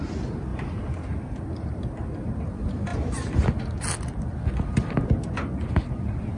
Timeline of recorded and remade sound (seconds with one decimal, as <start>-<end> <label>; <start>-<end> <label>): 0.0-0.5 recorded; 0.5-1.9 remade; 1.9-6.4 recorded